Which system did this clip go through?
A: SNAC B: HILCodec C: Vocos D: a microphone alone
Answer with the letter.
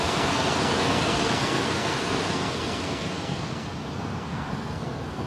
A